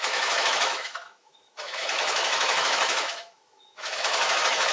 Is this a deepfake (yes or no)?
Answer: yes